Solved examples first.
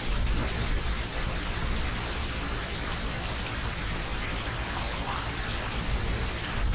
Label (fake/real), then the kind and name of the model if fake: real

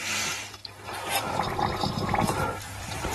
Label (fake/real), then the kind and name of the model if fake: fake, vocoder, BigVGAN v2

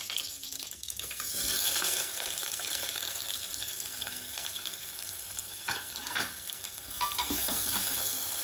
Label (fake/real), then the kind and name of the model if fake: fake, codec, SNAC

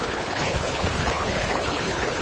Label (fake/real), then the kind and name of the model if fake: fake, codec, HILCodec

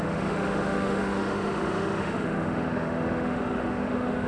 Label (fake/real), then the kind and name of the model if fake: fake, autoencoder, DAC-VAE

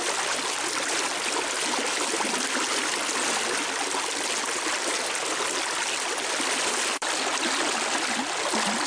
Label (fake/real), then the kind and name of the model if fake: real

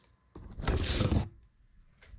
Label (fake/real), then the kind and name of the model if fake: fake, vocoder, BigVGAN v2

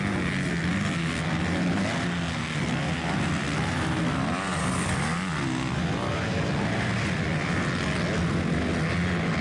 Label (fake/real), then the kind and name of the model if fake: real